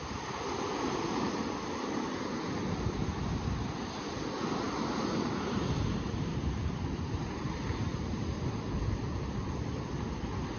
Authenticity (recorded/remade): recorded